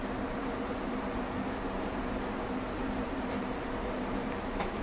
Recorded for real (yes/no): no